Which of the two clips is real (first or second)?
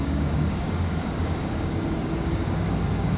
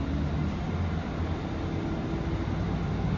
second